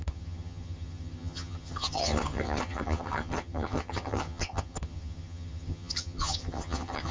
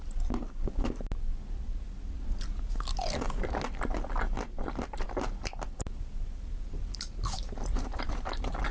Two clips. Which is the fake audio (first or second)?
first